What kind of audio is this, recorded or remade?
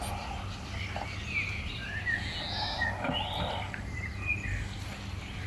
recorded